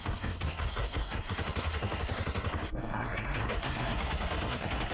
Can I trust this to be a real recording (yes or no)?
no